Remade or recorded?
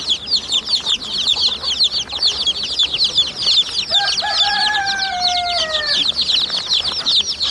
recorded